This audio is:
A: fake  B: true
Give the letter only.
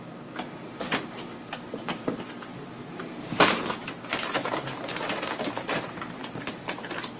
A